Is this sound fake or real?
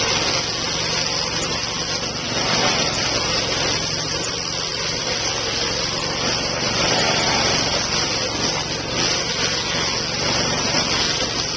real